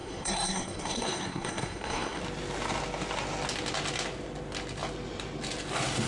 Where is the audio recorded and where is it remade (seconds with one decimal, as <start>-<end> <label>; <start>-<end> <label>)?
0.0-2.2 remade; 2.2-6.1 recorded